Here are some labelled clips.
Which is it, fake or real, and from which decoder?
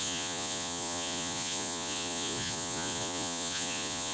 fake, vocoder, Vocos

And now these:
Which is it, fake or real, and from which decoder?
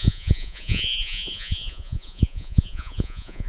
fake, vocoder, Vocos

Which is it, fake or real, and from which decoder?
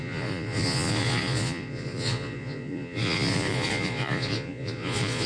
fake, vocoder, Vocos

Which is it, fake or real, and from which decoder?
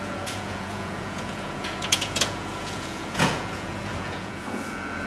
fake, vocoder, Vocos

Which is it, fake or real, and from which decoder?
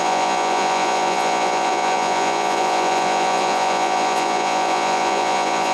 fake, vocoder, Vocos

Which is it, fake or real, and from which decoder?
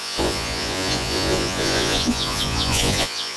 fake, vocoder, Vocos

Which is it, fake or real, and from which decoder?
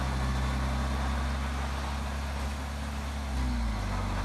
real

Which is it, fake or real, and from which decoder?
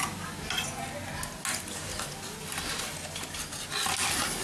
real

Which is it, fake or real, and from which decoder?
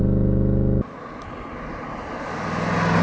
real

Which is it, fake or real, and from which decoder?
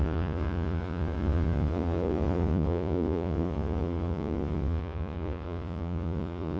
fake, vocoder, Vocos